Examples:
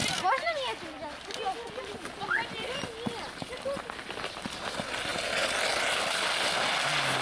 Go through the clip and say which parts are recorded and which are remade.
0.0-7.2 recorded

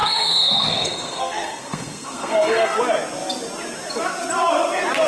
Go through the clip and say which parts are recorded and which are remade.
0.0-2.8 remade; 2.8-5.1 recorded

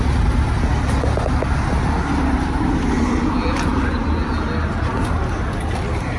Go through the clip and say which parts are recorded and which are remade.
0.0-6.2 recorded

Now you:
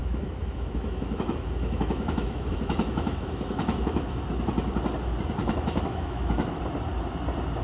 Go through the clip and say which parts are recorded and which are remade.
0.0-4.2 remade; 4.2-5.4 recorded; 5.4-6.6 remade; 6.6-7.6 recorded